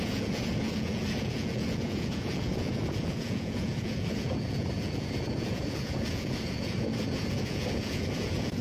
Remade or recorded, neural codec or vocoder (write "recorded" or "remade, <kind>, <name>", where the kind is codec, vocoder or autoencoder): remade, vocoder, Vocos